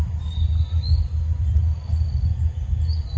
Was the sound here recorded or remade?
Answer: recorded